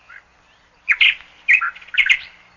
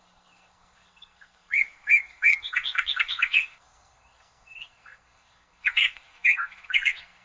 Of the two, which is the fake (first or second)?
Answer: second